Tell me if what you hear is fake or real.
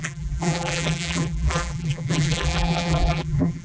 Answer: fake